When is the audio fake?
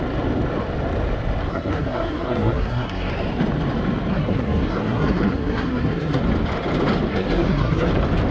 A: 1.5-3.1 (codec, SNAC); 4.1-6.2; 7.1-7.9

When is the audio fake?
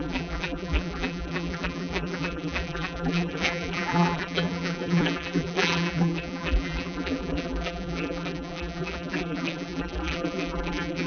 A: 0.0-11.1 (vocoder, BigVGAN v2)